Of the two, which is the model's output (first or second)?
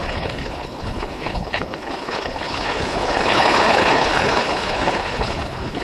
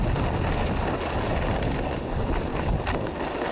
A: first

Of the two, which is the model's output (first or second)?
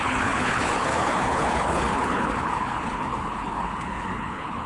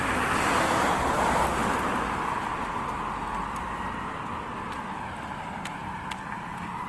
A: first